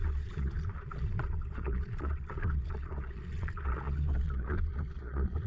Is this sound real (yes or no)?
no